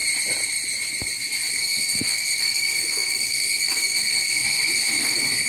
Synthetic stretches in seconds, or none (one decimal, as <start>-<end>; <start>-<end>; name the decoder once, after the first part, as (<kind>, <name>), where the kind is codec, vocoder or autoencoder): 1.5-5.5 (codec, SNAC)